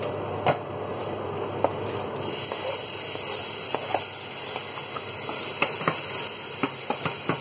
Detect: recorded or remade recorded